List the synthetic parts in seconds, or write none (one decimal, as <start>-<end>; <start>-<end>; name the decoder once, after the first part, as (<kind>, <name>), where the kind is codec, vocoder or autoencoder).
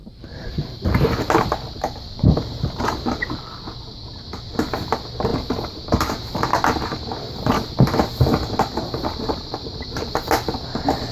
0.0-4.2 (vocoder, BigVGAN v2); 5.3-6.0; 9.1-10.1